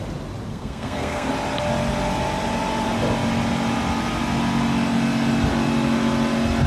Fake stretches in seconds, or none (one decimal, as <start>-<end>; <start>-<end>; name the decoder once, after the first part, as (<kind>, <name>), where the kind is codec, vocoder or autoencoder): 0.5-1.3 (codec, SNAC)